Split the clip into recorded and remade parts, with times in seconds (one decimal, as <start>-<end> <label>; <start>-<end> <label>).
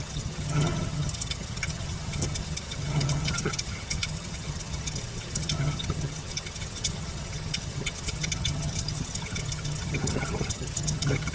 0.0-11.3 remade